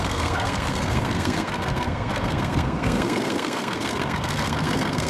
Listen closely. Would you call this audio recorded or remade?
remade